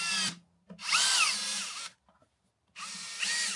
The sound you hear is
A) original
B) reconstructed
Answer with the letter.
A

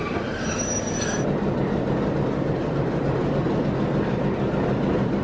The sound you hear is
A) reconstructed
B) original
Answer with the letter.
B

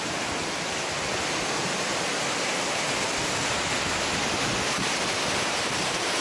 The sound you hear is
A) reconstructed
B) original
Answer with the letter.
B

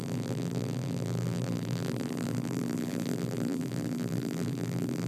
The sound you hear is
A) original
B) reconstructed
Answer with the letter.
B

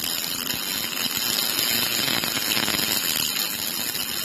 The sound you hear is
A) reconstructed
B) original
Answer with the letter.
B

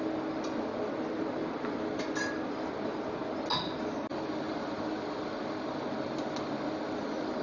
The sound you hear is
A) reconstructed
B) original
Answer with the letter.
B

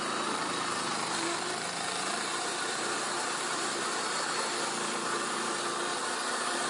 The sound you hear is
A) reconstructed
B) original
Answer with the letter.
A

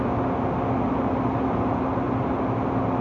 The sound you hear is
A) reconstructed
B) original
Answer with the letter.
B